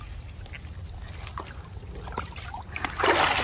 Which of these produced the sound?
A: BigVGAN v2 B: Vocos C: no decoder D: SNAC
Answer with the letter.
C